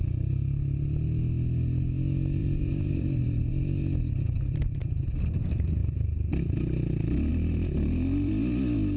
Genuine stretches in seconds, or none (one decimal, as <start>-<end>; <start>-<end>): 0.0-2.4; 3.5-7.3; 8.3-9.0